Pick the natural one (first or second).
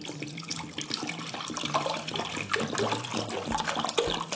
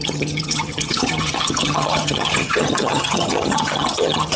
first